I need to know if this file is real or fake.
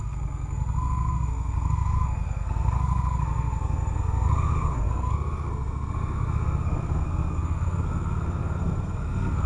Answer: fake